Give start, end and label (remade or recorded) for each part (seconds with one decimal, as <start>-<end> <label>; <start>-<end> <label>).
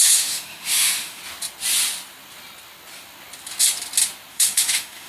0.0-1.2 remade; 1.2-4.3 recorded; 4.3-5.1 remade